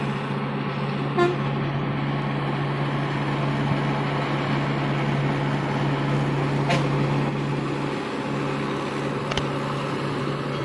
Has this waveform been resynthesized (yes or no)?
no